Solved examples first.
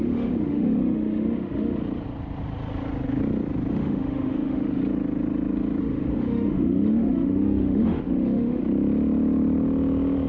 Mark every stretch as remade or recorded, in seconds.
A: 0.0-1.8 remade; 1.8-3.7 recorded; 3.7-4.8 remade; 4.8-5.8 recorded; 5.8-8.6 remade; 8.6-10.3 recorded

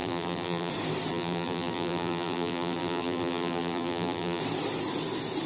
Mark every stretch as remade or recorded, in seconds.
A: 0.0-0.7 remade; 0.7-1.1 recorded; 1.1-4.4 remade; 4.4-5.5 recorded

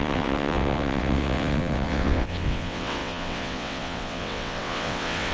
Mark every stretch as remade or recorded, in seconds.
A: 0.0-5.3 remade

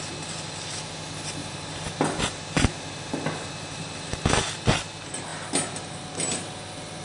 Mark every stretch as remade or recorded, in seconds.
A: 0.0-1.4 recorded; 1.4-2.2 remade; 2.2-7.0 recorded

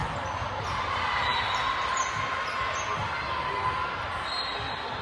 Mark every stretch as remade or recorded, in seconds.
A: 0.0-5.0 recorded

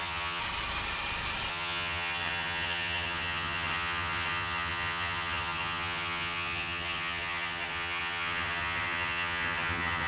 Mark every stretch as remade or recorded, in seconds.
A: 0.0-0.4 remade; 0.4-1.5 recorded; 1.5-10.1 remade